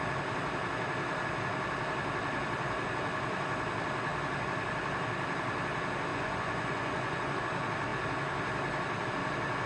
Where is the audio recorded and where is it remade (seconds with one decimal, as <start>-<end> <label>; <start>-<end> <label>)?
0.0-6.1 recorded; 6.1-7.4 remade; 7.4-9.7 recorded